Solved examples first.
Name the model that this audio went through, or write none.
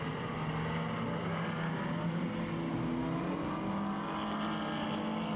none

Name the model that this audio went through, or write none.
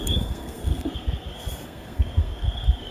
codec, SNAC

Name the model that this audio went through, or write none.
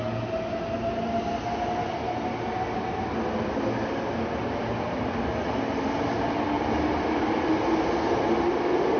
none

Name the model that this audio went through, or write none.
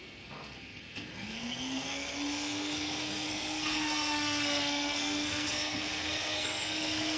codec, SNAC